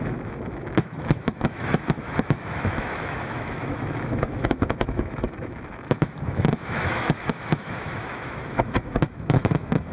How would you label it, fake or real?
fake